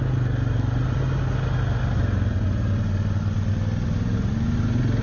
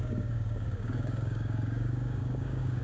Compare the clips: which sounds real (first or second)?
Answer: first